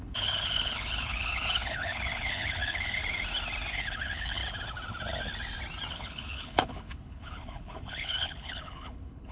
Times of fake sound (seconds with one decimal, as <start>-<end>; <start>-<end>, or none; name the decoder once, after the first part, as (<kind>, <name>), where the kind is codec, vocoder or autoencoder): 0.0-3.0 (codec, HILCodec); 3.7-4.4; 5.9-9.3